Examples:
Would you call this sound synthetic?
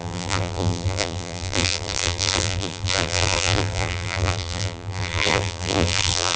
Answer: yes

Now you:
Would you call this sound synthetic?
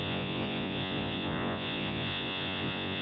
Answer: yes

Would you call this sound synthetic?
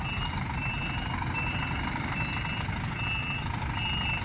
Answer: no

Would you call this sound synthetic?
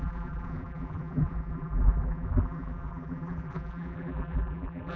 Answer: yes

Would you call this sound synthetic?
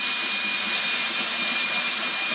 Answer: yes